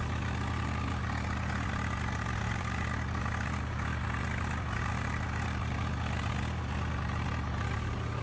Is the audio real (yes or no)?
yes